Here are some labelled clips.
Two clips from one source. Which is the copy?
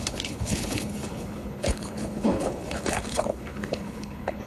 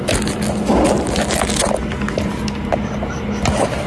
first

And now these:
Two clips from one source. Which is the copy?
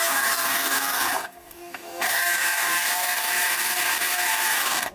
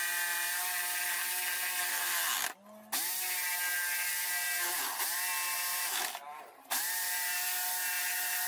first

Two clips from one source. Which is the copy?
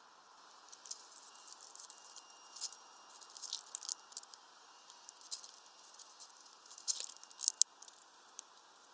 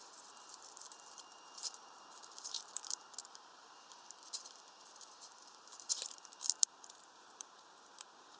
second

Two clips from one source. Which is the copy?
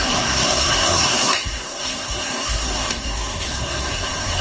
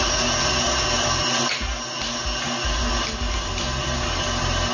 first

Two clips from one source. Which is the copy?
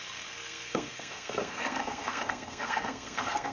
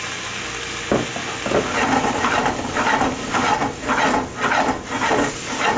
first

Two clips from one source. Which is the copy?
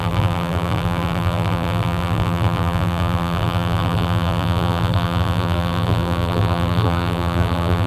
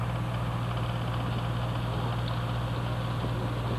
first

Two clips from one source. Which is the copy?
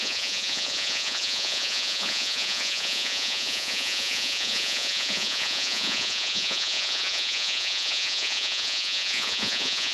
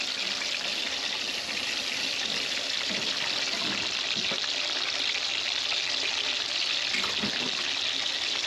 first